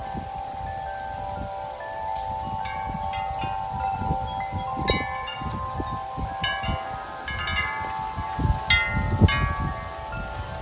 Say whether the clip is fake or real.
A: real